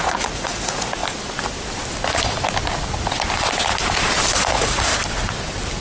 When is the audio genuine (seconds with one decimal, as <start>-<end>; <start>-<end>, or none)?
1.0-4.5; 4.9-5.8